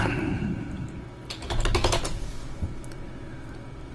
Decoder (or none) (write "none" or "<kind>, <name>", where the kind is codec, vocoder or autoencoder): none